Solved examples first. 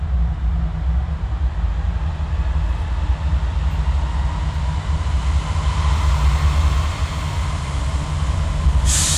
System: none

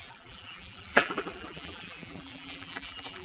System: vocoder, BigVGAN v2